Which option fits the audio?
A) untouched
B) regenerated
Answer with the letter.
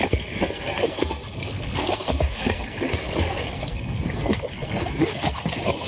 B